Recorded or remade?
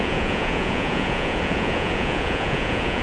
remade